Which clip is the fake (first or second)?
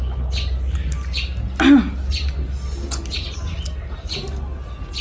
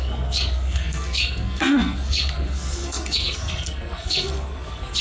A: second